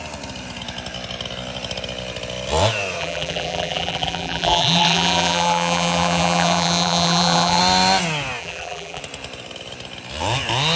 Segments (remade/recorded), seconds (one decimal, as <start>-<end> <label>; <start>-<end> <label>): 0.0-3.0 recorded; 3.0-7.6 remade; 7.6-8.4 recorded; 8.4-9.0 remade; 9.0-10.8 recorded